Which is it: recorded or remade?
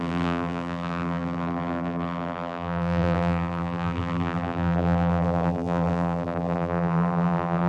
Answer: remade